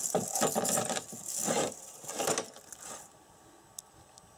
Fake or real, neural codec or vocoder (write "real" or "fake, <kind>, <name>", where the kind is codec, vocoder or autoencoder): real